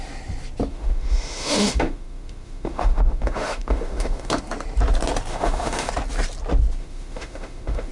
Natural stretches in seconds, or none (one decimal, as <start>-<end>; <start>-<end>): 0.0-0.7; 4.4-5.3; 5.9-6.8